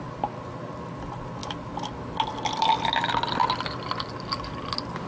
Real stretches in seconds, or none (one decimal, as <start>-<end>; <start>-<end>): 0.0-5.1